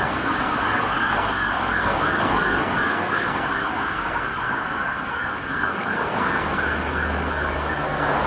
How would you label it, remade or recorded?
remade